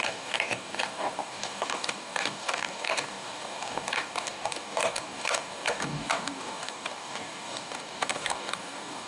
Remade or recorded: remade